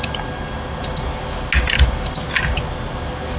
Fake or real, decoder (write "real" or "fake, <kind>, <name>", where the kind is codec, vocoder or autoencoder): real